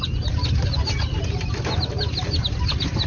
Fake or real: real